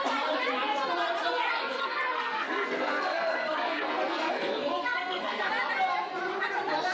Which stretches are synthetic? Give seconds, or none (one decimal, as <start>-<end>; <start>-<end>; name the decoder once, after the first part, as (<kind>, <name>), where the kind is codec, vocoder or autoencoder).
1.6-5.5 (codec, SNAC)